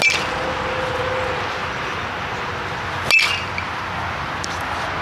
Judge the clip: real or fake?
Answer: real